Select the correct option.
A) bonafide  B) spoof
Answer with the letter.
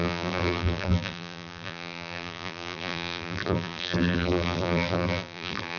B